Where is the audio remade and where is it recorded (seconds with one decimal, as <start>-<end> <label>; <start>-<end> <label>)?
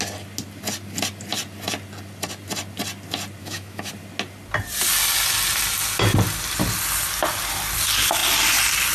0.0-3.4 recorded; 3.4-3.9 remade; 3.9-8.9 recorded